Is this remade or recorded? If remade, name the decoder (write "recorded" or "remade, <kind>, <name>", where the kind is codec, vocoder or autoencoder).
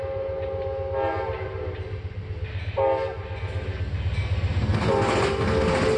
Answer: recorded